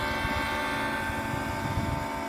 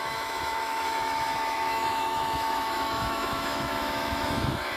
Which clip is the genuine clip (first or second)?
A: first